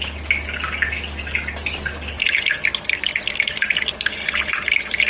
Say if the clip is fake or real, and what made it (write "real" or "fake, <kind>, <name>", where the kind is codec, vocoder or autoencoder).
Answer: real